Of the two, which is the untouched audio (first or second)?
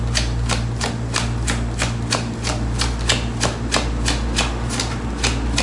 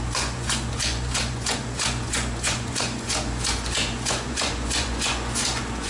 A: first